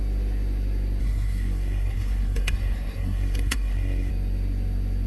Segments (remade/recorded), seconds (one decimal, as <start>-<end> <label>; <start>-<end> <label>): 0.0-1.0 recorded; 1.0-4.1 remade; 4.1-5.1 recorded